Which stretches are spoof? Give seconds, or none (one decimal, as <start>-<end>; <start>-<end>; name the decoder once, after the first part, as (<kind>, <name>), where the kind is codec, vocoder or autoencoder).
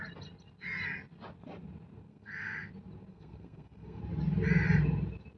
2.1-2.7 (codec, SNAC); 3.1-4.0